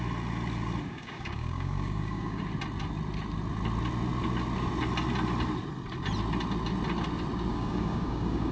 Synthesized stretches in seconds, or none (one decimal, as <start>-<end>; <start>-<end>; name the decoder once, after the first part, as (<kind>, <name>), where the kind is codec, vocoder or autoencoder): 0.9-2.4 (codec, DAC); 7.5-8.5